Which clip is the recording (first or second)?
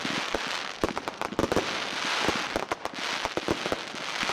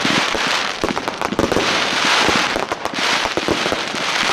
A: first